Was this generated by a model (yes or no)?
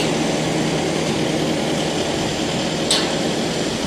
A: no